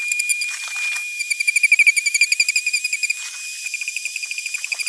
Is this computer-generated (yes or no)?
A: no